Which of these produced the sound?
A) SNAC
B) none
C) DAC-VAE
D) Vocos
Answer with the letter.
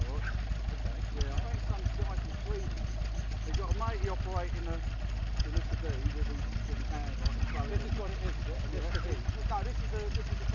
B